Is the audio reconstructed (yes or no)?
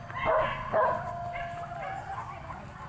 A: no